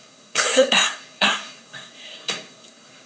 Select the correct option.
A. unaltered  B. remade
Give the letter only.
B